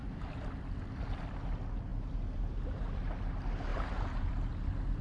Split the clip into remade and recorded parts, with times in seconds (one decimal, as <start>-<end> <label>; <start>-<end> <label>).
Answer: 0.0-3.7 recorded; 3.7-4.3 remade; 4.3-5.0 recorded